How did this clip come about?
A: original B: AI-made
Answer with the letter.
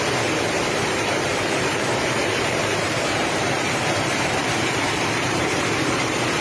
B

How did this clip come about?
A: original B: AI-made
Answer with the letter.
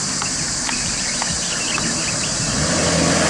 A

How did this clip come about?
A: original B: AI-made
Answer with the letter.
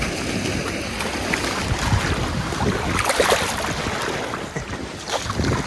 A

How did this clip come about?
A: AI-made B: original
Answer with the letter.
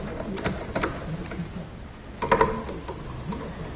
B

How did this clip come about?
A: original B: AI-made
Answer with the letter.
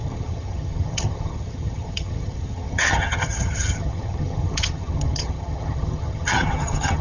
B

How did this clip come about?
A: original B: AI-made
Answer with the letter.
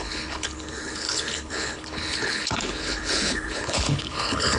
B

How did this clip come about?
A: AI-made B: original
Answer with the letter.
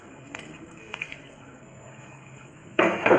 A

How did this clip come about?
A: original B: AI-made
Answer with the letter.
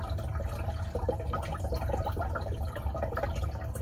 A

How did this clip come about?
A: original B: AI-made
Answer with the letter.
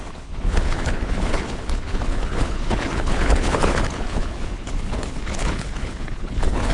B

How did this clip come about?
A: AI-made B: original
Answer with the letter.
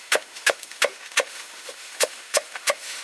A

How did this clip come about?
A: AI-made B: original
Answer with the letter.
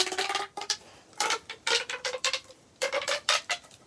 A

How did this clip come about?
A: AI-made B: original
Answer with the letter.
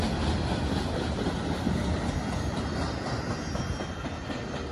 B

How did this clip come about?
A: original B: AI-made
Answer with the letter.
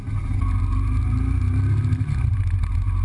A